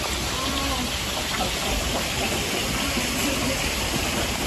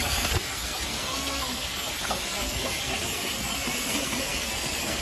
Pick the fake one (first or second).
second